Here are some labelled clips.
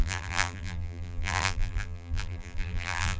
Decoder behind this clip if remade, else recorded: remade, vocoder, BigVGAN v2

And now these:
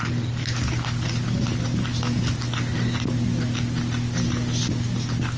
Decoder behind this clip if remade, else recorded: recorded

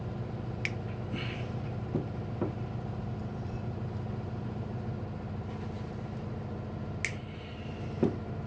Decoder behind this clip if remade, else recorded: recorded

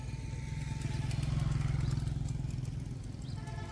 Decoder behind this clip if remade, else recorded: recorded